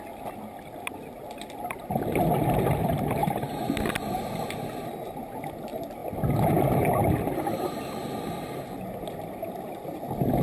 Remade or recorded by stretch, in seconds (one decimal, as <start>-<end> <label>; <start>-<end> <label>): 0.0-3.2 recorded; 3.2-3.7 remade; 3.7-10.4 recorded